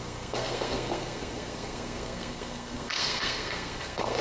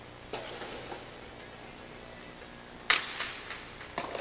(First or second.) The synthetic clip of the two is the first